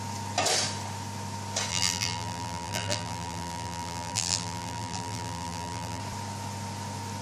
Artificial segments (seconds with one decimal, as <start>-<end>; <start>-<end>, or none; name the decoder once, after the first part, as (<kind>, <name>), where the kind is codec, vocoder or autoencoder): 1.7-6.0 (vocoder, BigVGAN v2)